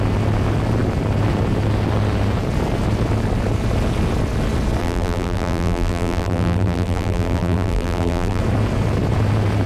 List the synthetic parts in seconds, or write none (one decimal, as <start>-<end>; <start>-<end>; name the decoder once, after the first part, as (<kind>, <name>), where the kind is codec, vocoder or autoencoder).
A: 4.8-8.4 (vocoder, BigVGAN v2)